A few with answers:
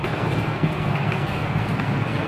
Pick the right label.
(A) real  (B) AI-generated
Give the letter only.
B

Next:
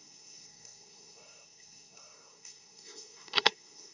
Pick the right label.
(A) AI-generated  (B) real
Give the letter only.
A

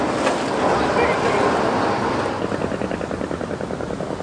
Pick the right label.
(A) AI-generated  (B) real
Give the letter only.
B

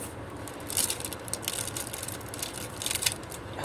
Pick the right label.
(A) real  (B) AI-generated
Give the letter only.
A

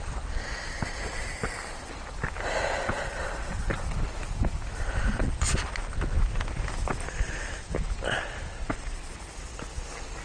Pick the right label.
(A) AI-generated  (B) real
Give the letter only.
B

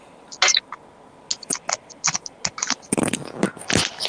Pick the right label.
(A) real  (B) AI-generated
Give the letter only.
A